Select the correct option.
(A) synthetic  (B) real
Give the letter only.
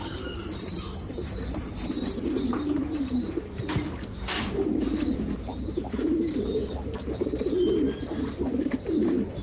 A